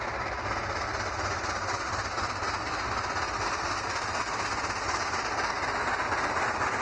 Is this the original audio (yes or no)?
yes